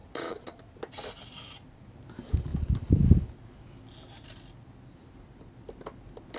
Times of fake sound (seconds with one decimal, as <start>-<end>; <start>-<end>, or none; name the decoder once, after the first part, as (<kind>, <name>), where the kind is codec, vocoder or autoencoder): 0.0-0.6 (vocoder, Vocos)